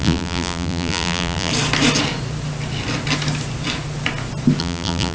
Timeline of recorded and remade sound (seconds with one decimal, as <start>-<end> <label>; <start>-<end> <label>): 0.0-1.5 remade; 1.5-4.6 recorded; 4.6-5.1 remade